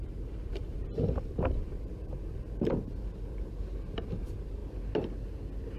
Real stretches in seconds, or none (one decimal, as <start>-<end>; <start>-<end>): 4.6-5.8